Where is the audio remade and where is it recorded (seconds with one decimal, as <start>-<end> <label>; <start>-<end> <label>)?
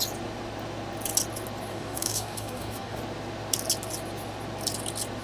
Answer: 0.0-1.7 recorded; 1.7-3.0 remade; 3.0-5.2 recorded